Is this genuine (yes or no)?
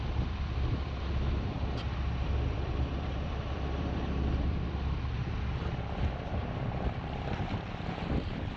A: no